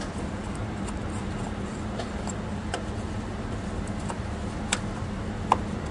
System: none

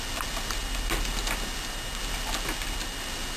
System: none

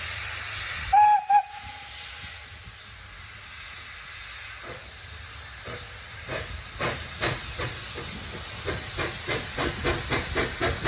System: none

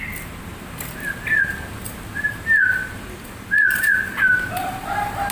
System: none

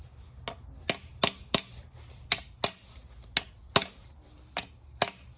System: none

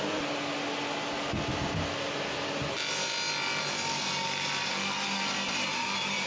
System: none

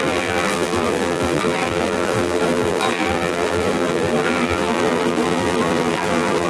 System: vocoder, BigVGAN v2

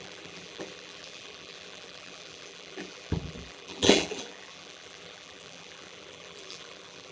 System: vocoder, BigVGAN v2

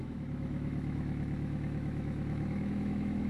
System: autoencoder, DAC-VAE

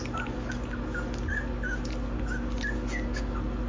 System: none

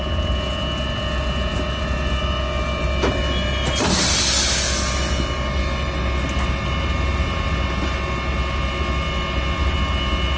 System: none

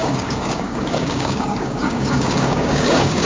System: codec, DAC